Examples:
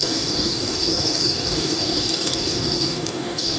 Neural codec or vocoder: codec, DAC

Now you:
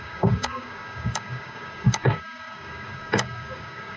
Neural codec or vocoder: codec, DAC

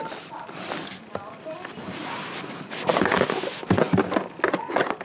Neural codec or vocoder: none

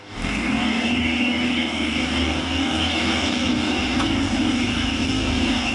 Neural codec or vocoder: codec, DAC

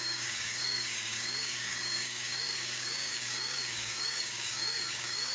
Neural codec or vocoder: codec, DAC